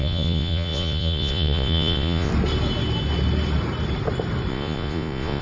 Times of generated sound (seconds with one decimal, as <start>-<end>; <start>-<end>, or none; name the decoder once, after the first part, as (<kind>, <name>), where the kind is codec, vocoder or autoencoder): 0.0-2.3 (vocoder, Vocos); 4.5-5.4